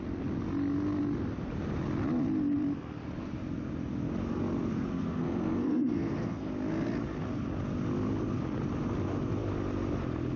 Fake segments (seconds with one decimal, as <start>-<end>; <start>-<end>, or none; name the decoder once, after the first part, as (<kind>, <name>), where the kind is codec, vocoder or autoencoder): 4.9-6.5 (codec, SNAC)